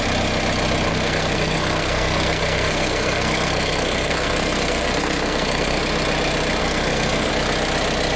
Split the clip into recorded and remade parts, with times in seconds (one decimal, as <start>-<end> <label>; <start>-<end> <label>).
0.0-0.9 recorded; 0.9-5.8 remade; 5.8-6.6 recorded; 6.6-7.3 remade; 7.3-8.2 recorded